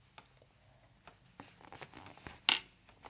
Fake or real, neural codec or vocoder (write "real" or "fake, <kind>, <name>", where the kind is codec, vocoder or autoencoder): real